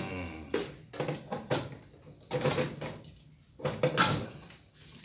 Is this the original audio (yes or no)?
yes